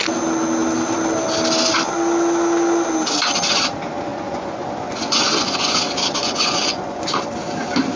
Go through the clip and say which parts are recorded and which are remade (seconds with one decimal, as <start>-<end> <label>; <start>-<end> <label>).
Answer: 0.0-4.1 recorded; 4.1-5.8 remade; 5.8-6.2 recorded; 6.2-7.1 remade; 7.1-8.0 recorded